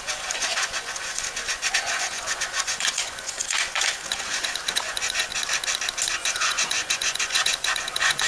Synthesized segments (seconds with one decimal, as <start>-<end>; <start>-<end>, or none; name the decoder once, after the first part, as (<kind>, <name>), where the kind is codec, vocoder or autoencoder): 0.0-5.3 (vocoder, Vocos); 6.1-8.3